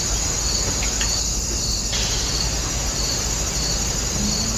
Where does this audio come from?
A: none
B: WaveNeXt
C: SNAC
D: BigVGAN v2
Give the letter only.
A